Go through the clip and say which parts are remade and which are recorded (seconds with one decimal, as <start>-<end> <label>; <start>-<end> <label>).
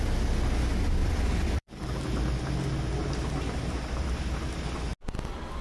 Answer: 0.0-1.0 recorded; 1.0-4.1 remade; 4.1-5.6 recorded